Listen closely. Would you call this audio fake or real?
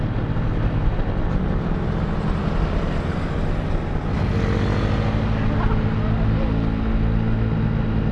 real